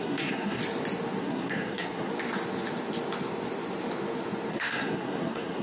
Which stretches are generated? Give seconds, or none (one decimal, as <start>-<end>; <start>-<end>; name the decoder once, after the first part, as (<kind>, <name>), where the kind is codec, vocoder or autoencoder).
0.0-0.6 (codec, SNAC); 1.2-2.1; 4.5-5.6